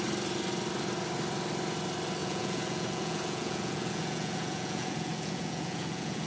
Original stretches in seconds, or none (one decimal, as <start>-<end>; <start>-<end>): 0.0-2.2